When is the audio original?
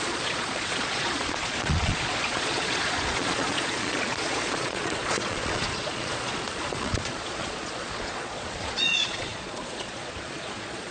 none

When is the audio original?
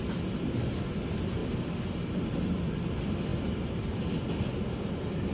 0.0-5.3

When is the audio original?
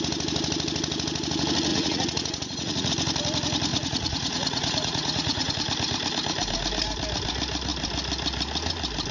0.0-1.7; 2.9-3.7; 5.5-9.1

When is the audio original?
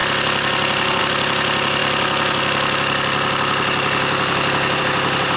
0.0-5.4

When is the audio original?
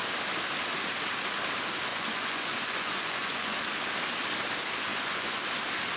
0.0-1.9; 3.6-4.9; 5.4-6.0